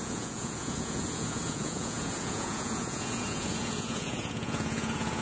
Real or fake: fake